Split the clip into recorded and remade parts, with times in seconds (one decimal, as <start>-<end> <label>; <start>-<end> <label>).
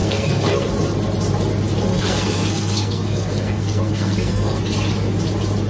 0.0-0.7 remade; 0.7-1.9 recorded; 1.9-4.6 remade; 4.6-5.7 recorded